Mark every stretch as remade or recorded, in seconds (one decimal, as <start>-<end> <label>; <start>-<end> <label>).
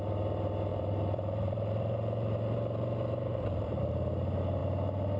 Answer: 0.0-0.7 recorded; 0.7-3.8 remade; 3.8-5.2 recorded